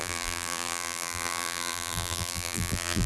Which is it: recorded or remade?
remade